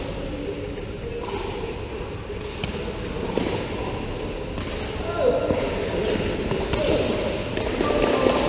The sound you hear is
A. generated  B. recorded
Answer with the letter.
B